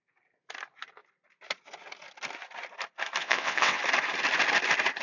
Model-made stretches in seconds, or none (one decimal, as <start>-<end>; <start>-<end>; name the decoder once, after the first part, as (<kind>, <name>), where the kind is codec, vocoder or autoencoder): 3.2-3.8 (vocoder, WaveNeXt)